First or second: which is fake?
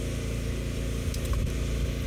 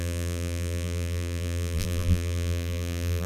second